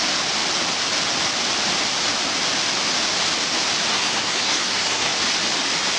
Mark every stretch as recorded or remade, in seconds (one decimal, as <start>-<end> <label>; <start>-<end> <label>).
0.0-3.9 recorded; 3.9-5.2 remade; 5.2-6.0 recorded